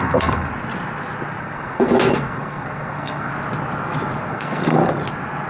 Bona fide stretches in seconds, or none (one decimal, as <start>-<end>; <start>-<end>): 0.5-1.4; 3.3-4.3; 4.8-5.5